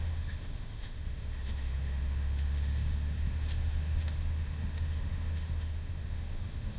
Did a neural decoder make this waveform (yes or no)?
yes